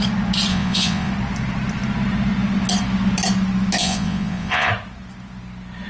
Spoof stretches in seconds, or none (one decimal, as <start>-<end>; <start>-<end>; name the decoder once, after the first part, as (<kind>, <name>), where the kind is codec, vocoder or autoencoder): 0.5-1.1 (vocoder, Vocos); 3.8-4.7